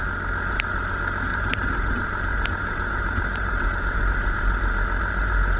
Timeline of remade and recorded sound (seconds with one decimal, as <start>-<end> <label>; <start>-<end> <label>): 0.0-1.3 recorded; 1.3-4.0 remade; 4.0-5.6 recorded